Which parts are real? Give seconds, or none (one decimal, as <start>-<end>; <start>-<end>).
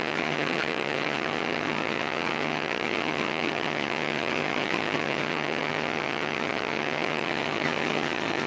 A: none